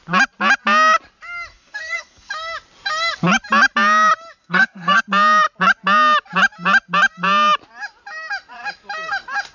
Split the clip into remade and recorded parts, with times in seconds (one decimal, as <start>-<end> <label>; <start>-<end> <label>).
0.0-1.5 recorded; 1.5-2.3 remade; 2.3-4.4 recorded; 4.4-5.0 remade; 5.0-9.5 recorded